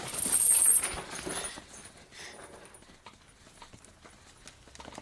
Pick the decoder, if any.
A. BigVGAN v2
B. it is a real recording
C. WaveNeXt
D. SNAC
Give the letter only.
B